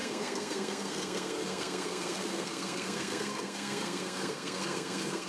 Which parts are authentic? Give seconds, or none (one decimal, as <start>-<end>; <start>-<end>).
none